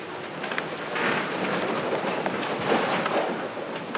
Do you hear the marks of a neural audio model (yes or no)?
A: no